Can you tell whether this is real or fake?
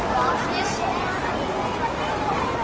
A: real